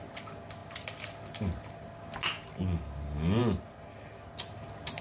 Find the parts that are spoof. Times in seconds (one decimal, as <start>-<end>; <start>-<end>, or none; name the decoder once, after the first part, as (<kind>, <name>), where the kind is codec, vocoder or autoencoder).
none